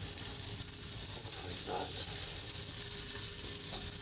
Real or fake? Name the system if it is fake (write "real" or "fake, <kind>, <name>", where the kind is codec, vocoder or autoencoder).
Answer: real